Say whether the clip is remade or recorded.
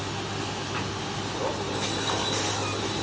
recorded